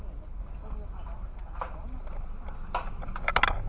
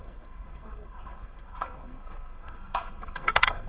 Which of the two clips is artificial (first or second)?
second